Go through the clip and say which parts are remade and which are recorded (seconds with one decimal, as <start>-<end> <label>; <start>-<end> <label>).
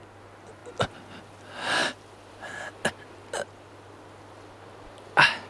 0.0-5.5 recorded